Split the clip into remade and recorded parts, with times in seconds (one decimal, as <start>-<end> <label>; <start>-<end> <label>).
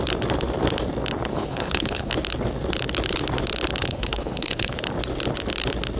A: 0.0-1.3 recorded; 1.3-2.1 remade; 2.1-3.8 recorded; 3.8-4.7 remade; 4.7-6.0 recorded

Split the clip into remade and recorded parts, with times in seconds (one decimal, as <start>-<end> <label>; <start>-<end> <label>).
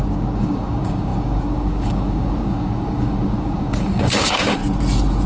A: 0.0-4.6 remade; 4.6-5.3 recorded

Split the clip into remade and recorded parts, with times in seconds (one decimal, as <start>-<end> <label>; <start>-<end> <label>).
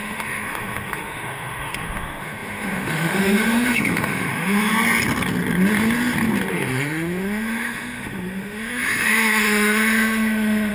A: 0.0-4.7 remade; 4.7-6.5 recorded; 6.5-10.7 remade